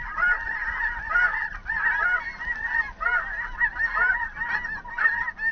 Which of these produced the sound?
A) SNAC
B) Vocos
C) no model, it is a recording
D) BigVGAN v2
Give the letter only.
C